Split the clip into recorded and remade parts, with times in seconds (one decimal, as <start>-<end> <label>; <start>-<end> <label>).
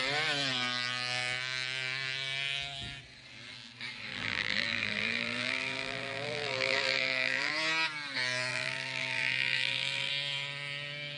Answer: 0.0-4.1 recorded; 4.1-7.5 remade; 7.5-8.5 recorded; 8.5-10.1 remade; 10.1-11.2 recorded